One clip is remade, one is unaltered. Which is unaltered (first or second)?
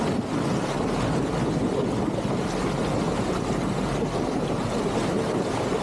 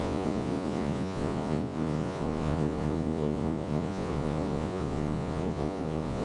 first